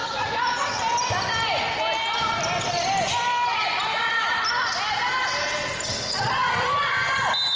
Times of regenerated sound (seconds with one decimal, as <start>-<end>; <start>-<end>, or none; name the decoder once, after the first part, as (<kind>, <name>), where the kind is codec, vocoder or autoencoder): 0.0-0.7 (vocoder, Vocos)